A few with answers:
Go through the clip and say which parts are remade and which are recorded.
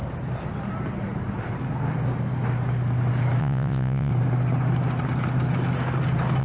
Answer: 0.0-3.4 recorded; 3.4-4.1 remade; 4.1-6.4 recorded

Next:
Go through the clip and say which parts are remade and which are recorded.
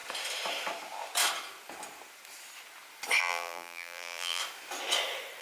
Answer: 0.0-3.2 recorded; 3.2-4.4 remade; 4.4-5.4 recorded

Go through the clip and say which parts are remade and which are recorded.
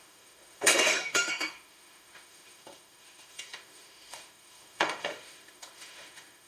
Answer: 0.0-6.5 remade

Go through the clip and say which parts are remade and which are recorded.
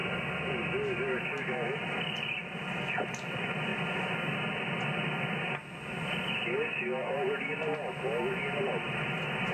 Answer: 0.0-1.8 recorded; 1.8-3.7 remade; 3.7-8.6 recorded; 8.6-9.5 remade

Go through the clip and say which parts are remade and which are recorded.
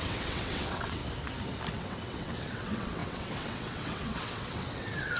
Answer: 0.0-1.0 remade; 1.0-1.7 recorded; 1.7-5.2 remade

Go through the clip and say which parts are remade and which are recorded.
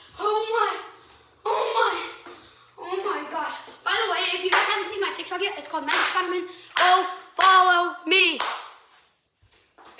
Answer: 0.0-6.0 remade; 6.0-8.2 recorded; 8.2-10.0 remade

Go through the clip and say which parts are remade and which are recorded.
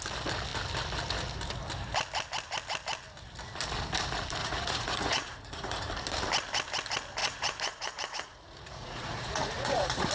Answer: 0.0-4.4 recorded; 4.4-5.9 remade; 5.9-7.2 recorded; 7.2-10.1 remade